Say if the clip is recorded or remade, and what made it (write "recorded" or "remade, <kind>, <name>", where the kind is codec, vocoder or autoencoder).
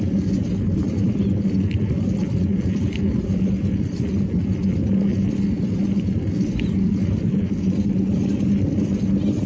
recorded